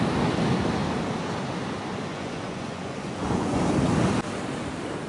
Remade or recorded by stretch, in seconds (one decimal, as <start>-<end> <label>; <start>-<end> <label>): 0.0-2.1 recorded; 2.1-3.6 remade; 3.6-5.1 recorded